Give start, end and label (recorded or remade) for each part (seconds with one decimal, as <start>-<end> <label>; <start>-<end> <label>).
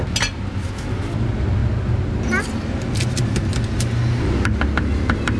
0.0-5.4 recorded